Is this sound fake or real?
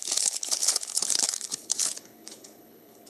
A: fake